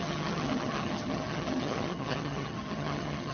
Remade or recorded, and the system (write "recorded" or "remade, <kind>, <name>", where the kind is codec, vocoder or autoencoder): remade, vocoder, HiFi-GAN